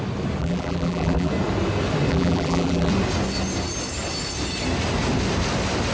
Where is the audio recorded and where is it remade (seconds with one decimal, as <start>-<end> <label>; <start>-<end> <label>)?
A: 0.0-0.4 recorded; 0.4-1.3 remade; 1.3-2.1 recorded; 2.1-2.9 remade; 2.9-5.9 recorded